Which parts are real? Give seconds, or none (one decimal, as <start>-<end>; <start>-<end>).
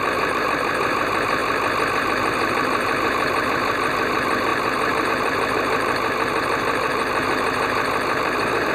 1.4-2.0